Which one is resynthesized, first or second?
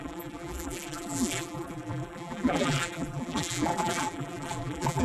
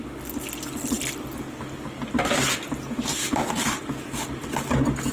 first